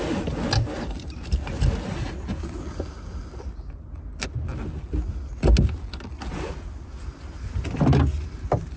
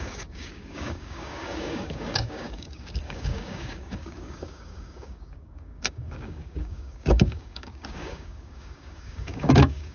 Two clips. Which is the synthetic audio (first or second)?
second